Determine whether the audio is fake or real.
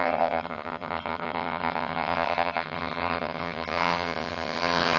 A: fake